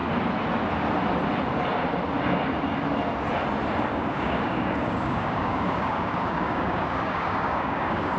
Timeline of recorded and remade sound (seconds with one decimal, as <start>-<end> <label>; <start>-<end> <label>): 0.0-3.9 recorded; 3.9-8.2 remade

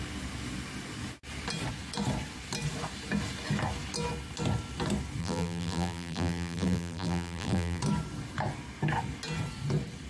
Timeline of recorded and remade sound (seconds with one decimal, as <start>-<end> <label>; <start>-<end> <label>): 0.0-5.2 recorded; 5.2-7.8 remade; 7.8-10.1 recorded

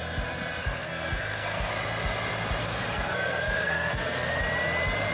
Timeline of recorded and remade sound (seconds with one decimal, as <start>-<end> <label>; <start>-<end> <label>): 0.0-0.6 recorded; 0.6-1.7 remade; 1.7-2.6 recorded; 2.6-4.4 remade; 4.4-5.1 recorded

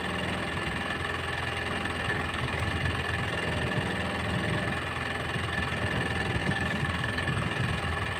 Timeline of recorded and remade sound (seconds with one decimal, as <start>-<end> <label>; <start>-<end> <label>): 0.0-2.1 recorded; 2.1-2.7 remade; 2.7-6.4 recorded; 6.4-7.6 remade; 7.6-8.2 recorded

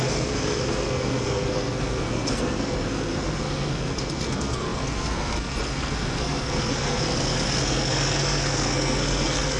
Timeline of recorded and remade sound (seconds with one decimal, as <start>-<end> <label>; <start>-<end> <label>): 0.0-9.6 remade

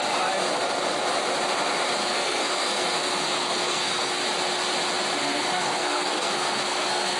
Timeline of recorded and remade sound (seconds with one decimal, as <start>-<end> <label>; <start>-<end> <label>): 0.0-2.0 recorded; 2.0-4.2 remade; 4.2-5.2 recorded; 5.2-7.2 remade

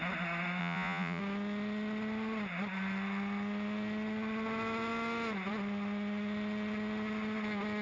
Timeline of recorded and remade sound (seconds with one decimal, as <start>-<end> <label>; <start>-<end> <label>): 0.0-0.6 recorded; 0.6-1.2 remade; 1.2-7.8 recorded